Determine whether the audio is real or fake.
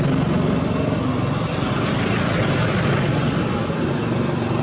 real